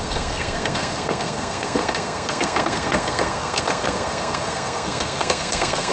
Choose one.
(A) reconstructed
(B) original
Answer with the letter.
A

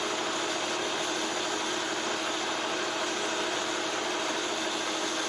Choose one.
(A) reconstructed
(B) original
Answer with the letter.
B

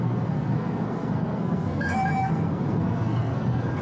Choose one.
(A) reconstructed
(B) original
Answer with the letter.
A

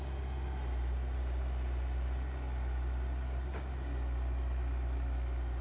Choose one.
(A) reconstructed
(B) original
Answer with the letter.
B